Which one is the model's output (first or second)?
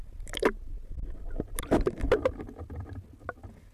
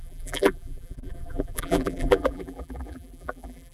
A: second